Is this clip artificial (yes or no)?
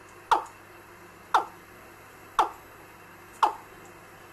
no